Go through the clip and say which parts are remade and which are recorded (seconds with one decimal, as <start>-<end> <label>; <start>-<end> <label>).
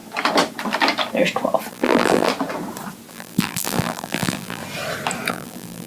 0.0-1.7 recorded; 1.7-2.3 remade; 2.3-3.1 recorded; 3.1-4.6 remade; 4.6-5.3 recorded; 5.3-5.9 remade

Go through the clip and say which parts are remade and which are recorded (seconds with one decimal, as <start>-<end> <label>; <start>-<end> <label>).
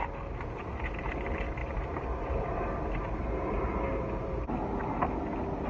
0.0-0.6 recorded; 0.6-1.1 remade; 1.1-1.6 recorded; 1.6-4.6 remade; 4.6-5.7 recorded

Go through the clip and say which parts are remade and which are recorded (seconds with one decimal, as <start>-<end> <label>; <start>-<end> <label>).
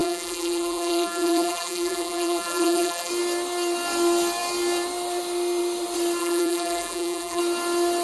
0.0-3.1 remade; 3.1-6.2 recorded; 6.2-7.4 remade; 7.4-8.0 recorded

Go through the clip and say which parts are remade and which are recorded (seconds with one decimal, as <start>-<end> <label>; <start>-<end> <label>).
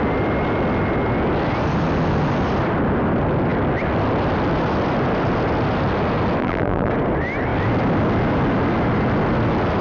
0.0-6.4 recorded; 6.4-6.9 remade; 6.9-9.8 recorded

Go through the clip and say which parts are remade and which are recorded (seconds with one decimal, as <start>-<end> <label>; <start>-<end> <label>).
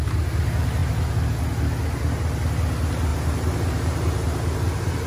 0.0-3.1 recorded; 3.1-5.1 remade